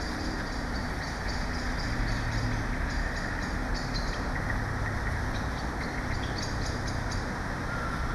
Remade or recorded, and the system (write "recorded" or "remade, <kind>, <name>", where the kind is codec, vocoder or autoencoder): recorded